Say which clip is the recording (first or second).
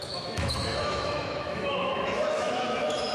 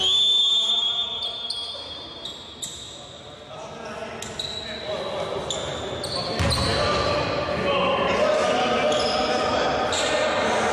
second